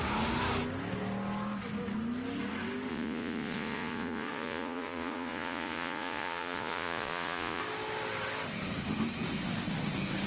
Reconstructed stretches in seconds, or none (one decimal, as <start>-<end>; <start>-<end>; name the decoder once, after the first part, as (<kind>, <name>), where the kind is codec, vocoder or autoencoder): 2.9-7.6 (vocoder, Vocos)